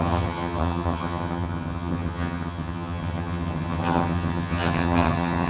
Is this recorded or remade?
remade